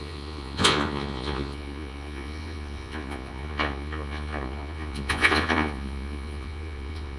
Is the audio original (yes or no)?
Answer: no